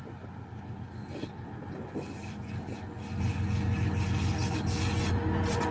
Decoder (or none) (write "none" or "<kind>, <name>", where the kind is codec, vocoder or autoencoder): none